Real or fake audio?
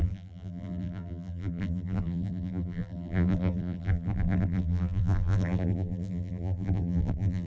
fake